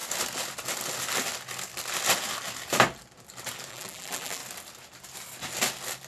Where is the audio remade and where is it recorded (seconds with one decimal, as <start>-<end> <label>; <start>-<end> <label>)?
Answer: 0.0-3.7 recorded; 3.7-4.4 remade; 4.4-6.1 recorded